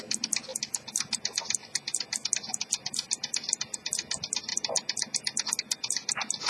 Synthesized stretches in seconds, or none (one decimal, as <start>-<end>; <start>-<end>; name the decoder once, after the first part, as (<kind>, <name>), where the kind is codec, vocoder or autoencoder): none